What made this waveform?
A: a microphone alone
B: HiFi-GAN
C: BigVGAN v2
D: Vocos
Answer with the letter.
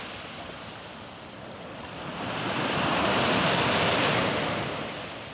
C